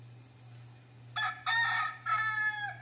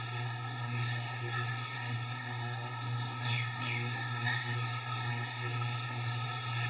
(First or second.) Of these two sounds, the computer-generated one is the second